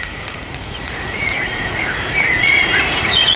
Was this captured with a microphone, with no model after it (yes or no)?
no